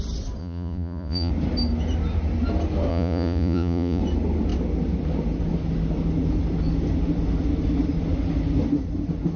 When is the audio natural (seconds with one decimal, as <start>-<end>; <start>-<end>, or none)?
0.0-0.4; 1.3-2.9; 4.0-9.4